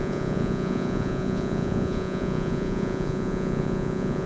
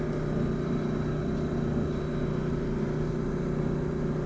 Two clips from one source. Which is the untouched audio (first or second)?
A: second